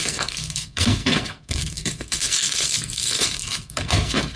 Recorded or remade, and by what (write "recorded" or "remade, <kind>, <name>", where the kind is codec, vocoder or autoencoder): remade, codec, SNAC